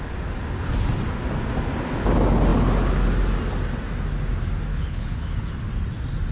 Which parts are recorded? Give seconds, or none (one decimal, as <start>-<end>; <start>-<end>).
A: 0.0-4.7; 5.5-6.3